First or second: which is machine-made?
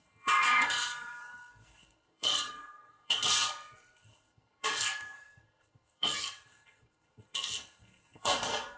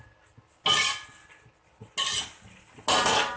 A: first